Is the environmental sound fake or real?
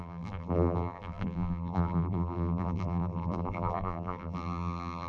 fake